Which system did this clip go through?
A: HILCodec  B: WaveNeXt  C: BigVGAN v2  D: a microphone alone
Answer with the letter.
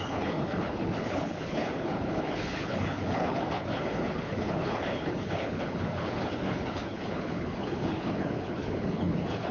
A